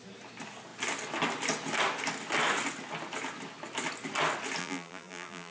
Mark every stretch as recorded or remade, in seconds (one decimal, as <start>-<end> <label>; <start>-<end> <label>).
0.0-4.6 recorded; 4.6-5.5 remade